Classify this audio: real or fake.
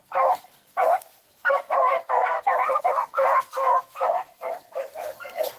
fake